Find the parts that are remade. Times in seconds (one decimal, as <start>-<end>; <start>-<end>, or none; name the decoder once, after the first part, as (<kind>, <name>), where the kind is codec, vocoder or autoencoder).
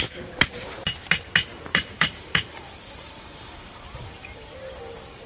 1.7-5.3 (vocoder, BigVGAN v2)